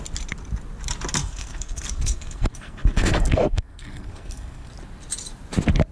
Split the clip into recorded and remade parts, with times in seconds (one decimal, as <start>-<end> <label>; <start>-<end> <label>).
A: 0.0-1.2 recorded; 1.2-4.7 remade; 4.7-5.9 recorded